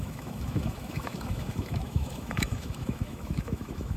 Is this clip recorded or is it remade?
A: remade